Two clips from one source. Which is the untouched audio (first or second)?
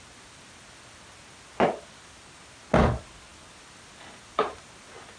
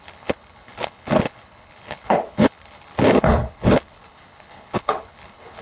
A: first